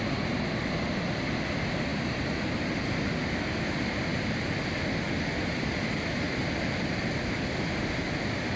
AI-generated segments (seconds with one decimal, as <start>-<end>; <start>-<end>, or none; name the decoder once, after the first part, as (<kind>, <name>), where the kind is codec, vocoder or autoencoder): none